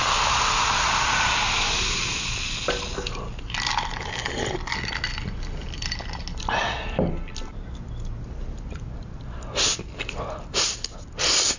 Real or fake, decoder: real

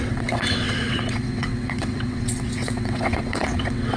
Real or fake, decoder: fake, vocoder, WaveNeXt